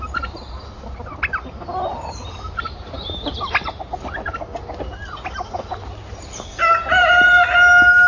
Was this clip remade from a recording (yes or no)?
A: no